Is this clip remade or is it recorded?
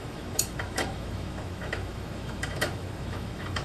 remade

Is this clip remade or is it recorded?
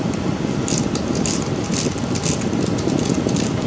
recorded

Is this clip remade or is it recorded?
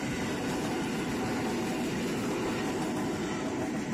recorded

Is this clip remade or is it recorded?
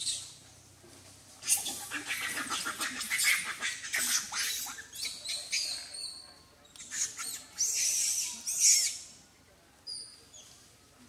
recorded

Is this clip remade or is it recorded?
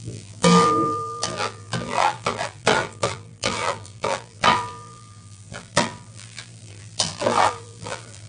remade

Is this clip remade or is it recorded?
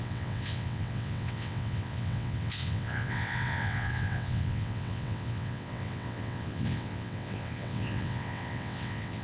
remade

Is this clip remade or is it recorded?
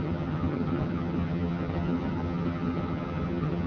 remade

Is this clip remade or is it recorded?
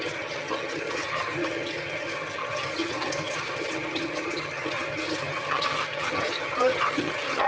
remade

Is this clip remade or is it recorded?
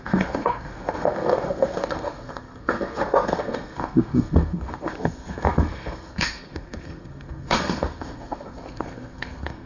remade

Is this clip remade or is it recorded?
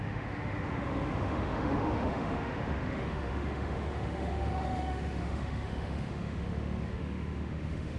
remade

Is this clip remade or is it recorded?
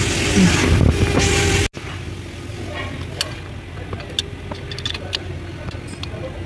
recorded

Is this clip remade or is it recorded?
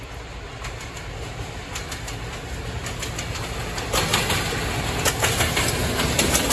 recorded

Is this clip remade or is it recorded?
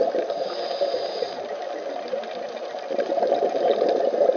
recorded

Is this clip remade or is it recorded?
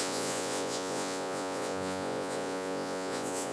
remade